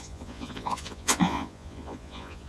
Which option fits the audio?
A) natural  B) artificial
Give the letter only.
B